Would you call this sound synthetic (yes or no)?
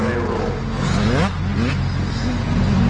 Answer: no